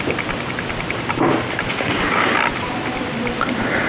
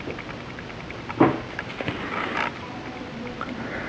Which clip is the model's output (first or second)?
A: first